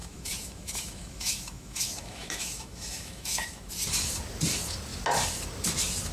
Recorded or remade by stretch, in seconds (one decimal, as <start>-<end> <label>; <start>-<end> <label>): 0.0-3.7 remade; 3.7-6.1 recorded